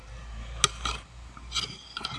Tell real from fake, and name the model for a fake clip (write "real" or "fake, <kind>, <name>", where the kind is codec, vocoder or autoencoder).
real